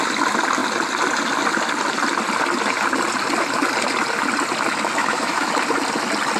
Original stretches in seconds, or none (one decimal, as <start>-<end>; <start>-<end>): 0.0-5.0; 5.5-6.4